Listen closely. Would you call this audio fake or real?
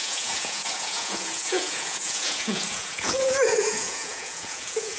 fake